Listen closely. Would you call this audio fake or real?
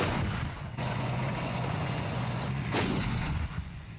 fake